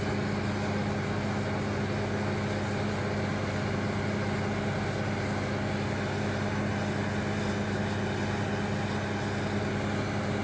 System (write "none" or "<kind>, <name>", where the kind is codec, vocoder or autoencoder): none